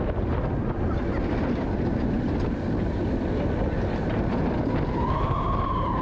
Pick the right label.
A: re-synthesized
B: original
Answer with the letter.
B